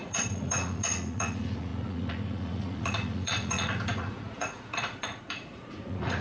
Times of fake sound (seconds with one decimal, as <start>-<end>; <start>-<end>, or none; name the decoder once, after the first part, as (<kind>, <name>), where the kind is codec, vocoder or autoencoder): 0.0-6.2 (vocoder, Vocos)